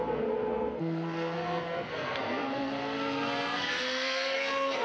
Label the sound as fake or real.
fake